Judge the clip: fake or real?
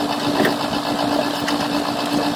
real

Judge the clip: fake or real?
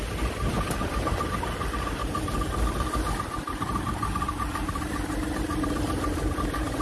fake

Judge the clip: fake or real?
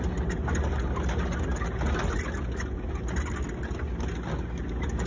real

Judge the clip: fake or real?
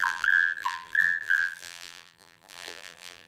fake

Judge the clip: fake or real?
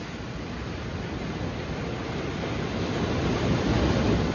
real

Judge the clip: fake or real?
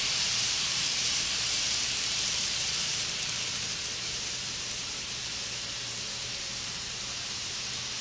fake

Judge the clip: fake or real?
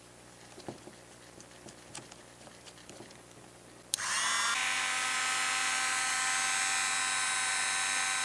real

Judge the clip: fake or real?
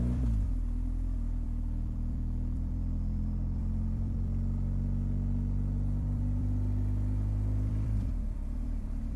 fake